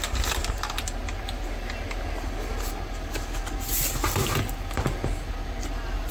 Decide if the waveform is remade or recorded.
recorded